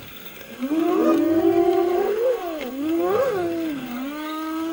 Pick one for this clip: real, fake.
fake